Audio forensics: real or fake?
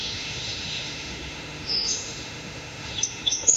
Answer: fake